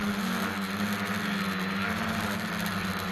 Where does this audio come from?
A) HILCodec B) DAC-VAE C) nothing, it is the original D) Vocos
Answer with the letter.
C